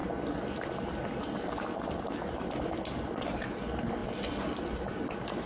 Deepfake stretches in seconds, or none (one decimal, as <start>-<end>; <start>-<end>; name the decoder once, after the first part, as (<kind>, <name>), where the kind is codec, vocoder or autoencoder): none